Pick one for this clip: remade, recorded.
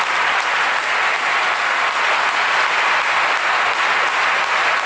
recorded